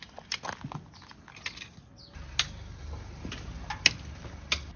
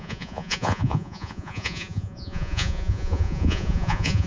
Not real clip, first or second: second